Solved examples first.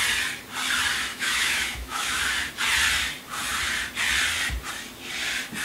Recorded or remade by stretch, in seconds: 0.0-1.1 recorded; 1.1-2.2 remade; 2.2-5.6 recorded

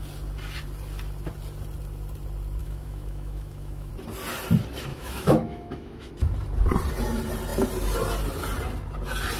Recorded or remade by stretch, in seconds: 0.0-2.6 recorded; 2.6-3.9 remade; 3.9-4.9 recorded; 4.9-6.1 remade; 6.1-9.4 recorded

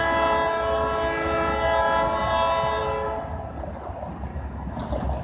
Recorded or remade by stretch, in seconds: 0.0-4.3 recorded; 4.3-4.8 remade; 4.8-5.2 recorded

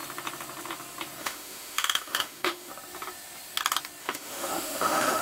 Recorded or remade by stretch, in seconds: 0.0-1.2 recorded; 1.2-2.7 remade; 2.7-4.0 recorded; 4.0-5.2 remade

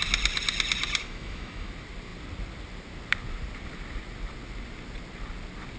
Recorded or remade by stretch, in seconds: 0.0-1.0 recorded; 1.0-1.7 remade; 1.7-5.8 recorded

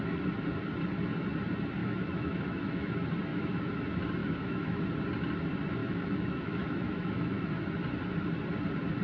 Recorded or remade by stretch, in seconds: 0.0-1.8 recorded; 1.8-2.9 remade; 2.9-3.3 recorded; 3.3-3.8 remade; 3.8-4.2 recorded; 4.2-4.8 remade; 4.8-5.8 recorded; 5.8-7.5 remade; 7.5-9.0 recorded